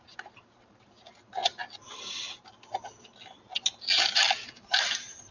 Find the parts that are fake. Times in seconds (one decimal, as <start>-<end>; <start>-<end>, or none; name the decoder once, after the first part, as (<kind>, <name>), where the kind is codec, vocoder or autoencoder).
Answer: 0.0-1.4 (vocoder, BigVGAN v2); 4.6-5.3